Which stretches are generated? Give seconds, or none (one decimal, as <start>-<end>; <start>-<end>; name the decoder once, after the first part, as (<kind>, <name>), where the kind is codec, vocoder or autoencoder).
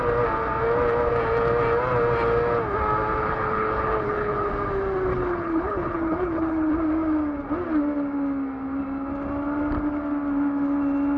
3.2-4.5 (codec, HILCodec); 5.1-6.7